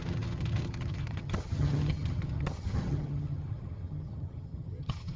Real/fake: fake